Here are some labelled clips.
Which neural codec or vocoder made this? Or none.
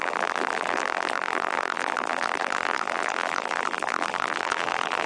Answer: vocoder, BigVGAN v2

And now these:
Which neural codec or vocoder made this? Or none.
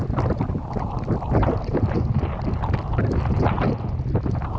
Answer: none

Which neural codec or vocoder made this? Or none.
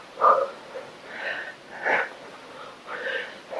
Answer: none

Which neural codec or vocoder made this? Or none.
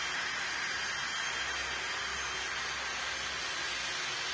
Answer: none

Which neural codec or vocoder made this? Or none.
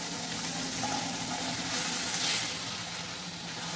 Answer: none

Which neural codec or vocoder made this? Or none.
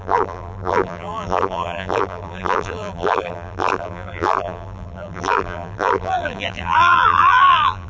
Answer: vocoder, BigVGAN v2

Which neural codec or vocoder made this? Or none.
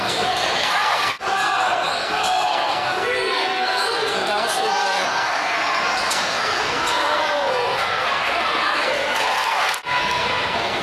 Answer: codec, SNAC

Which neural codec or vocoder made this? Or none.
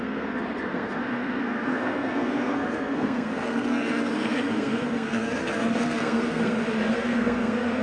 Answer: codec, SNAC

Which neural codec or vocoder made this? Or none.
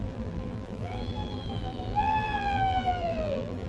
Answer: vocoder, BigVGAN v2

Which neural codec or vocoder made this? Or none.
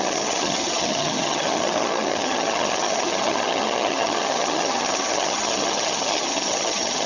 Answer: vocoder, HiFi-GAN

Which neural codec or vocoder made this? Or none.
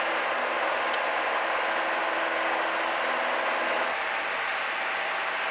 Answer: none